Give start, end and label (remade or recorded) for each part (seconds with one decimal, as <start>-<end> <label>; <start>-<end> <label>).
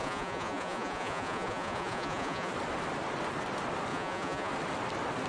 0.0-2.5 remade; 2.5-3.9 recorded; 3.9-4.5 remade; 4.5-5.3 recorded